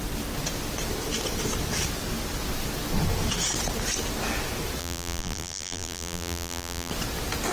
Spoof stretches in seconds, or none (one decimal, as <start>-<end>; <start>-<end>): 4.8-6.9